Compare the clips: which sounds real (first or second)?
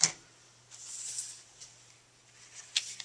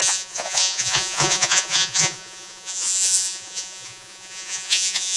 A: first